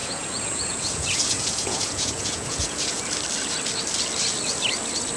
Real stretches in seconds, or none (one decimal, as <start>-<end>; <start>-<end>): 3.1-5.2